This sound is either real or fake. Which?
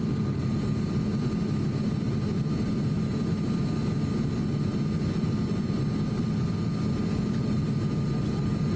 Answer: real